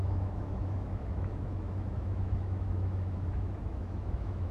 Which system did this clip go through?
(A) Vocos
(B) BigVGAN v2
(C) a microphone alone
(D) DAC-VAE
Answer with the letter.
D